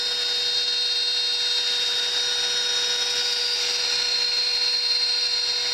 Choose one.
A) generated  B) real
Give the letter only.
B